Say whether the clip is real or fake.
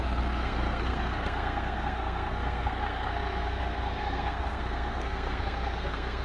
fake